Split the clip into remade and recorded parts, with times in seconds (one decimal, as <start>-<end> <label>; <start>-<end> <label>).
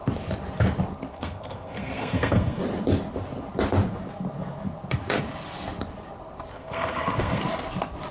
0.0-1.1 recorded; 1.1-2.6 remade; 2.6-6.5 recorded; 6.5-7.4 remade; 7.4-8.1 recorded